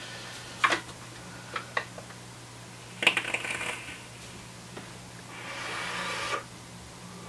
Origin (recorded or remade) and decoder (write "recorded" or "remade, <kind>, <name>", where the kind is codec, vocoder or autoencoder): recorded